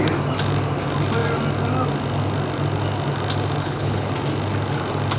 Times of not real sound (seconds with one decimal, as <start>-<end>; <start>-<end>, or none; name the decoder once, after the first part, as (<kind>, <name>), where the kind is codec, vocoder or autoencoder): 3.6-4.1 (codec, HILCodec)